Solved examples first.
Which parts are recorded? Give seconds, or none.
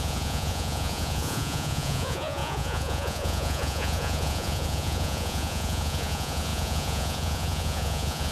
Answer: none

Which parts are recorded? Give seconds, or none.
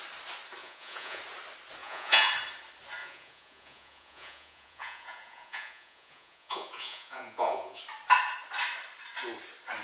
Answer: 0.0-0.6; 1.2-1.8; 2.3-3.0; 7.8-9.8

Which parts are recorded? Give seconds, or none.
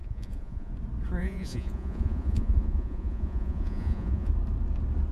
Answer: 0.7-1.2; 4.3-5.1